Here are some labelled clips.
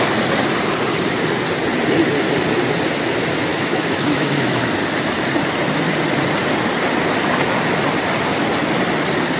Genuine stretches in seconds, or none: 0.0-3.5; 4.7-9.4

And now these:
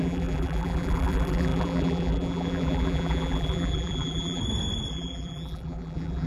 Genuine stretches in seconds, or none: 4.4-4.9

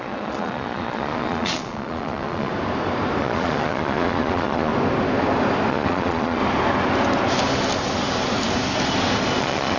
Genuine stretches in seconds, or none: 2.5-3.2; 4.7-5.7; 6.4-9.4

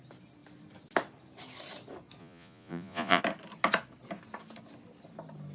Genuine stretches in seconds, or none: 0.0-2.2; 3.2-5.5

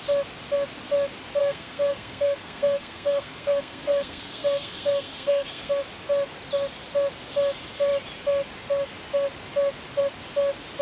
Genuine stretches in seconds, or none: 0.0-1.4; 5.7-10.8

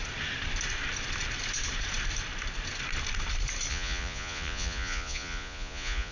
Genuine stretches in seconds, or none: 0.0-3.7

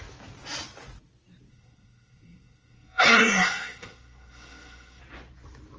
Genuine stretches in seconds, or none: 0.0-1.5; 5.0-5.8

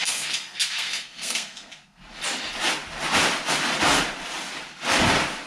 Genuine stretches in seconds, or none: 2.0-5.5